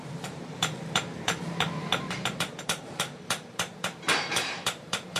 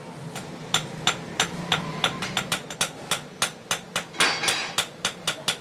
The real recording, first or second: second